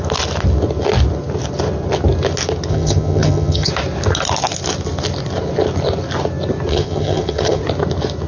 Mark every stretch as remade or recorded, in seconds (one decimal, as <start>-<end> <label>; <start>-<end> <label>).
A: 0.0-2.7 recorded; 2.7-3.7 remade; 3.7-6.7 recorded; 6.7-7.6 remade; 7.6-8.3 recorded